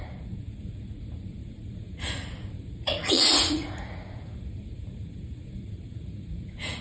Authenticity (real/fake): fake